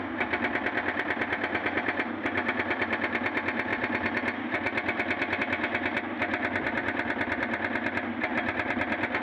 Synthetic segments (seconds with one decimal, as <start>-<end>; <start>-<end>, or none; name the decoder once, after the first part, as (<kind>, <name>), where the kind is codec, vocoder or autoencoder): 0.0-3.7 (vocoder, BigVGAN v2); 5.4-9.2